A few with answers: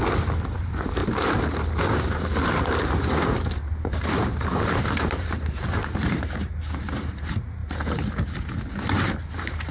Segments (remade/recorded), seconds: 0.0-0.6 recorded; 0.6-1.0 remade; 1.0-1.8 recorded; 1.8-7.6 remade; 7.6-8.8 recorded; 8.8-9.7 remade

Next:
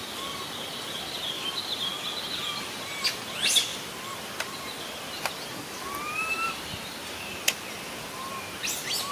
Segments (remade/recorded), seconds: 0.0-1.6 remade; 1.6-3.7 recorded; 3.7-8.3 remade; 8.3-9.1 recorded

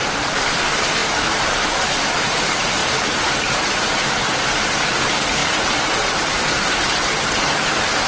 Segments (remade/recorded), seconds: 0.0-8.1 remade

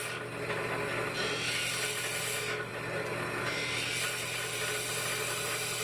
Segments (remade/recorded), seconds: 0.0-5.8 recorded